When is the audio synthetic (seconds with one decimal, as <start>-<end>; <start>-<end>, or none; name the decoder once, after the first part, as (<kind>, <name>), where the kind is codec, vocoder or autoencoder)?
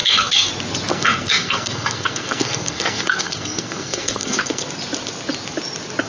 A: 0.0-0.5 (codec, SNAC); 0.9-4.6